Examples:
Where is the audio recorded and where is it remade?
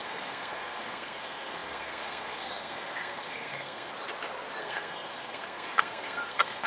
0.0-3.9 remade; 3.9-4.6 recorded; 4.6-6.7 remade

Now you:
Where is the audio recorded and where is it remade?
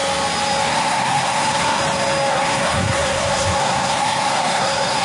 0.0-0.7 recorded; 0.7-1.8 remade; 1.8-2.3 recorded; 2.3-5.0 remade